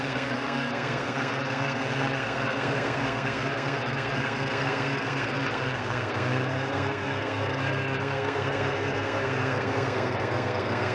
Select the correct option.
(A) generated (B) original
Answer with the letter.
A